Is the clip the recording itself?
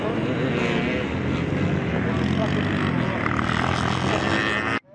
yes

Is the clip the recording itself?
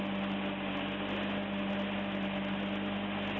yes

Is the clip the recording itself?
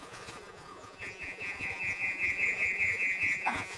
no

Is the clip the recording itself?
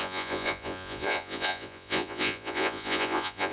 no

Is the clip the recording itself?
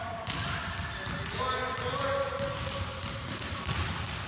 yes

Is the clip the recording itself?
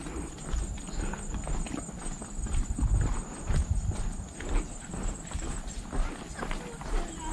yes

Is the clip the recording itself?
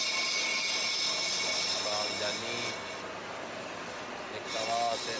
yes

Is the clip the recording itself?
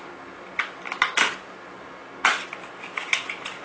yes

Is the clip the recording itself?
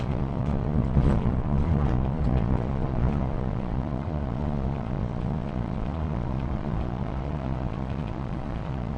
no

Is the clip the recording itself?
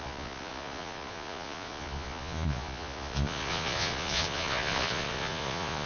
no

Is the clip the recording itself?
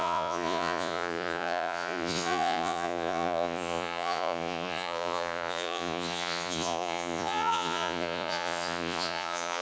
no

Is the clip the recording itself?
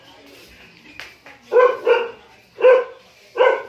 yes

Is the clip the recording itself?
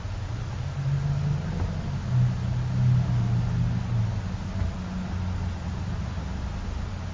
yes